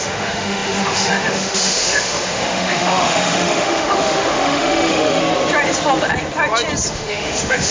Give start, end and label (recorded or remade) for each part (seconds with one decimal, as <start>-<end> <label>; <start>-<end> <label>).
0.0-5.2 remade; 5.2-6.9 recorded; 6.9-7.7 remade

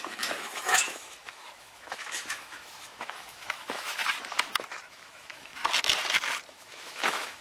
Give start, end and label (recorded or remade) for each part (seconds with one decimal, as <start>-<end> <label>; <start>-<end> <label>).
0.0-4.0 remade; 4.0-4.9 recorded; 4.9-5.6 remade; 5.6-6.5 recorded; 6.5-7.4 remade

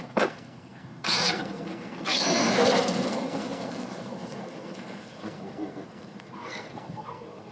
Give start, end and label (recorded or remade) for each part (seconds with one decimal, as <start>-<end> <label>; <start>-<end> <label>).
0.0-7.5 remade

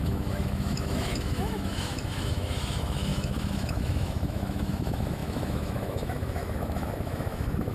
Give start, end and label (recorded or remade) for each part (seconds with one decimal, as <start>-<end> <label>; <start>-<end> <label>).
0.0-7.7 remade